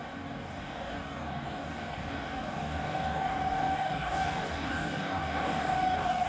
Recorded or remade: remade